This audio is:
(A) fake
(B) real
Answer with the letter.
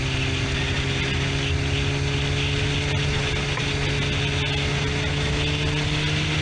B